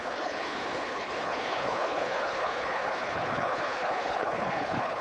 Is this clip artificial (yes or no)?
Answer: yes